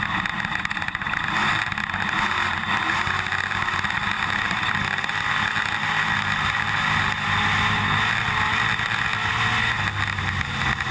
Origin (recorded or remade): recorded